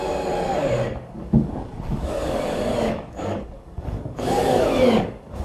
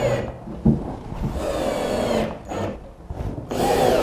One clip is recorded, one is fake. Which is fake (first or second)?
first